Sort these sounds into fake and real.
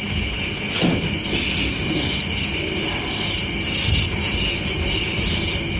real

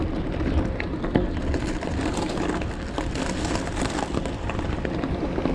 real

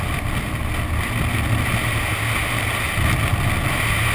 real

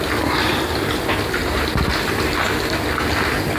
real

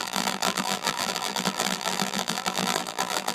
fake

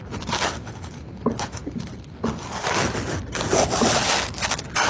real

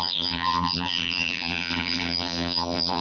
fake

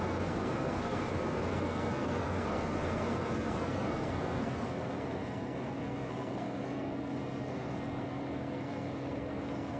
fake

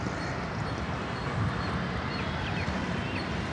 real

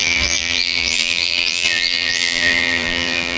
fake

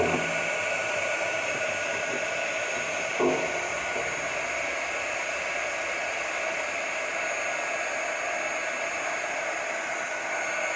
real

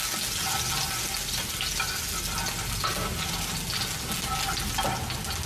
real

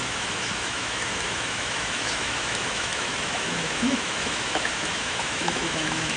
fake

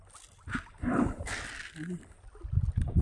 real